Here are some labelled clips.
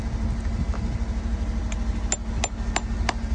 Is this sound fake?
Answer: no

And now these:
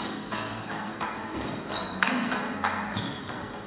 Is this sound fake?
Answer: yes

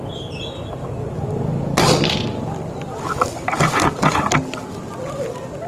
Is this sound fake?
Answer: no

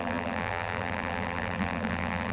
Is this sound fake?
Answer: yes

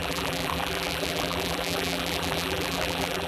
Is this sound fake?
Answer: yes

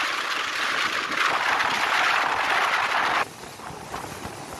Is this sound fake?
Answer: no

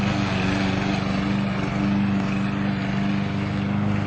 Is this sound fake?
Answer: no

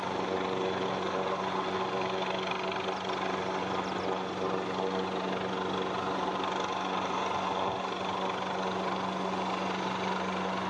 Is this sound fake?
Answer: no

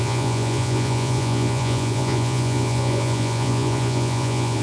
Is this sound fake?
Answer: yes